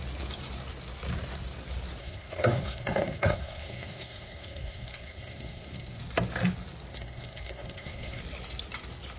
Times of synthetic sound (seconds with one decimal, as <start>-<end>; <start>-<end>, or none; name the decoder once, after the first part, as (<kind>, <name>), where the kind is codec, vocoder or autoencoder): 2.0-6.0 (codec, SNAC); 6.9-8.2